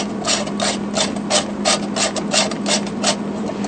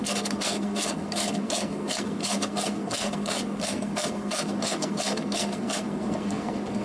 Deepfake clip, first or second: second